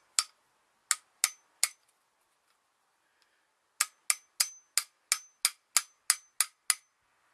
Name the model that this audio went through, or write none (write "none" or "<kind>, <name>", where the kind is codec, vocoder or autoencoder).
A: none